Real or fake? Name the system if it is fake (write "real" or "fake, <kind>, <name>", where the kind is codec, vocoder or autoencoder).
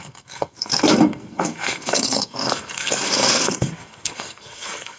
fake, codec, SNAC